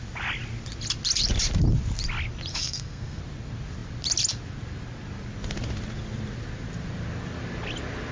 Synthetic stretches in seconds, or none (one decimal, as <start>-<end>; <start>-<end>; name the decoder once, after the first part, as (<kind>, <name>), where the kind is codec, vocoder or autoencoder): 2.5-3.2 (codec, SNAC)